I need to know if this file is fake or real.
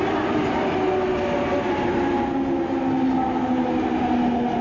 real